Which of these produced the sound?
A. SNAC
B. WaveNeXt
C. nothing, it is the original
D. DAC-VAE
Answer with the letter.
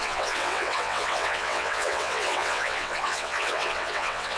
B